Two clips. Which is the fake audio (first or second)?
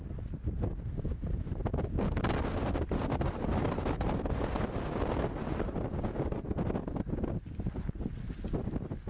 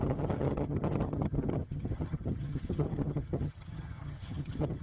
second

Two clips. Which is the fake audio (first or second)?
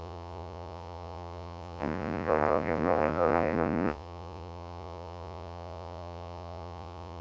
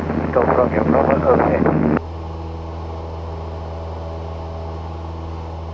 first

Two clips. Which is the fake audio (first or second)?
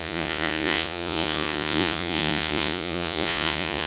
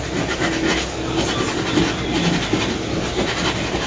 first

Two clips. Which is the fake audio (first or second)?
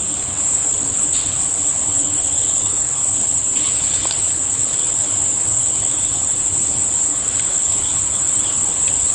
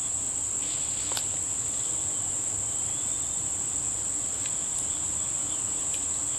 first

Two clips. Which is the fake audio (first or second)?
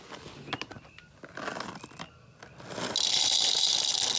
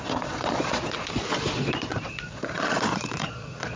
second